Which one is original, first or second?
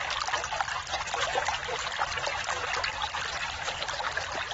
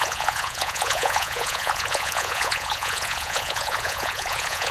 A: first